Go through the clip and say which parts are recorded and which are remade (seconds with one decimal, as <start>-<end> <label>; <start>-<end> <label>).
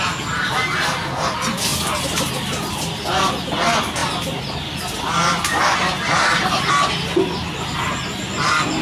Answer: 0.0-8.8 recorded